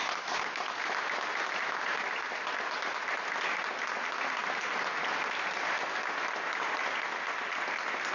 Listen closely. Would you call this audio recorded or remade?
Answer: recorded